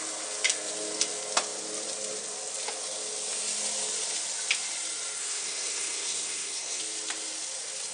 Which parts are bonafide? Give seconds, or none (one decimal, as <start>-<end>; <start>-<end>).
0.0-5.2; 6.8-7.9